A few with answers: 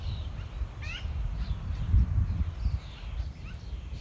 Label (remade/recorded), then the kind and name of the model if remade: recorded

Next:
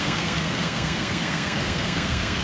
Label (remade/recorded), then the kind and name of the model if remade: remade, codec, SNAC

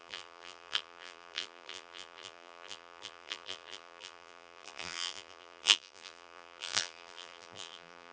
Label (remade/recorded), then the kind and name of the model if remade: remade, vocoder, BigVGAN v2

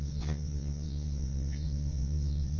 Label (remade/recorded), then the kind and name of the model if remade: remade, vocoder, WaveNeXt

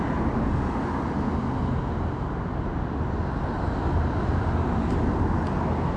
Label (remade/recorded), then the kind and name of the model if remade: recorded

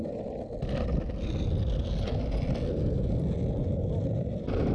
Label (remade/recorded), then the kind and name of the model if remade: recorded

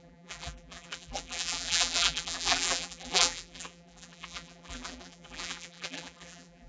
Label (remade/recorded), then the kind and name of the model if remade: remade, vocoder, BigVGAN v2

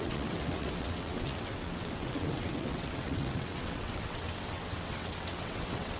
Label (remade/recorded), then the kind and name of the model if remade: remade, vocoder, WaveNeXt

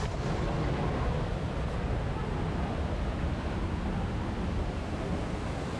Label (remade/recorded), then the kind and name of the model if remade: recorded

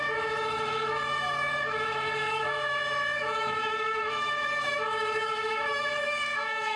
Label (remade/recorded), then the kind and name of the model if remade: remade, autoencoder, DAC-VAE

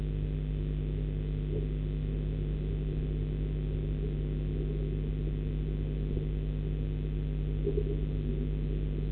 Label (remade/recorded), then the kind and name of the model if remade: recorded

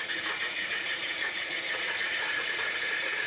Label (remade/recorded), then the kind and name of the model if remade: remade, vocoder, Vocos